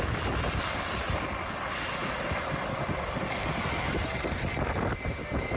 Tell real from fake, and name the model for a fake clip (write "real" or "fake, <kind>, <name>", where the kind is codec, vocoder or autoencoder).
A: real